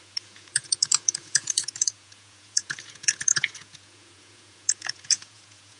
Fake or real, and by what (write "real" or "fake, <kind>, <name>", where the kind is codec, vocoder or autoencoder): fake, vocoder, Vocos